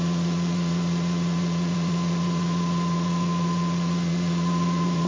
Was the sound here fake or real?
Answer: fake